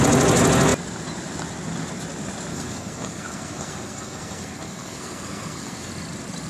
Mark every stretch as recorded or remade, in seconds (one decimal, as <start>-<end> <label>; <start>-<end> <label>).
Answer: 0.0-2.5 recorded; 2.5-5.9 remade; 5.9-6.5 recorded